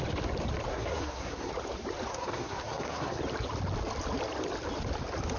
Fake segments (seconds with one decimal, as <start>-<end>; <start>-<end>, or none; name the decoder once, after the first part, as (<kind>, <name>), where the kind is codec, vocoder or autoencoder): 0.7-1.5 (codec, SNAC); 2.1-3.2